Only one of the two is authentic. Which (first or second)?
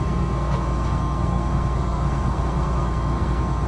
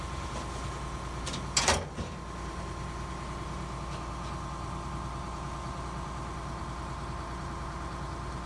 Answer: second